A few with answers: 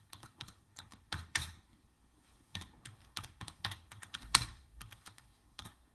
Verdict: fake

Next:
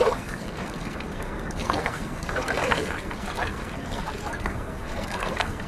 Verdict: fake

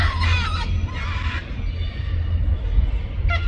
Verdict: real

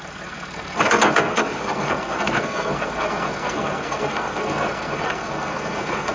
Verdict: fake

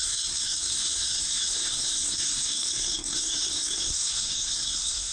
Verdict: fake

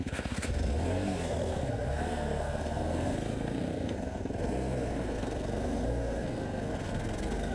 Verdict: fake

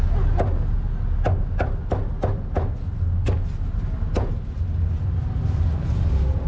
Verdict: real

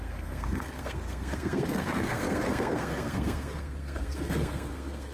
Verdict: fake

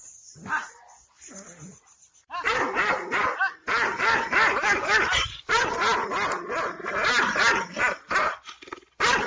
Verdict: real